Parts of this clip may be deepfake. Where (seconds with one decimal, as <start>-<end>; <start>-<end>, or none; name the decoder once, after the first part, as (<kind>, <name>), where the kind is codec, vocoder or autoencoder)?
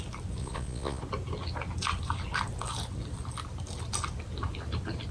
0.4-1.0 (vocoder, Vocos)